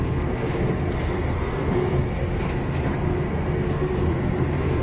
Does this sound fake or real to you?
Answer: fake